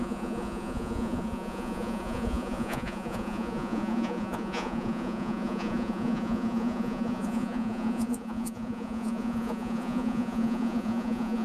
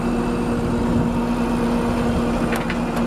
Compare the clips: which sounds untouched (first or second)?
second